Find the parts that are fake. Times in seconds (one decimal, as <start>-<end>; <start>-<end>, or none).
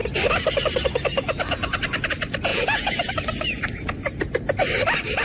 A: 2.5-3.1